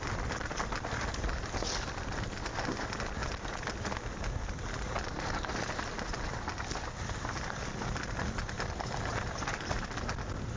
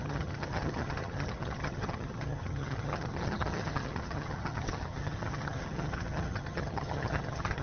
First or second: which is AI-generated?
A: second